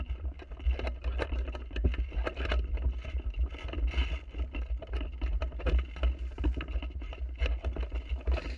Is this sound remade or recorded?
recorded